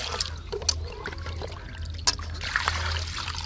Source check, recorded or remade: recorded